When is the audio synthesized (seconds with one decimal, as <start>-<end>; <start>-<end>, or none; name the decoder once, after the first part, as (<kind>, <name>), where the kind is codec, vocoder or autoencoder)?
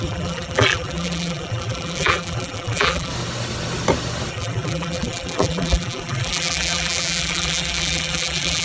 0.0-3.1 (vocoder, BigVGAN v2); 4.3-8.6